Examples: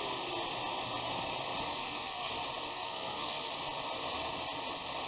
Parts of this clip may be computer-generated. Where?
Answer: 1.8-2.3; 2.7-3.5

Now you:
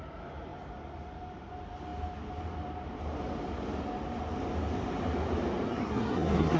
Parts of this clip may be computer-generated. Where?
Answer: 5.7-6.6